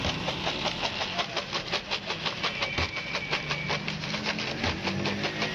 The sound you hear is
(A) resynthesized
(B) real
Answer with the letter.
B